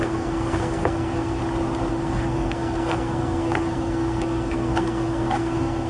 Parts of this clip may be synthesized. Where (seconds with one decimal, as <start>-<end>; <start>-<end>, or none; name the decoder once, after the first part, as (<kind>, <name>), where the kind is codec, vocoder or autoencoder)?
0.0-1.4 (codec, SNAC); 1.9-5.9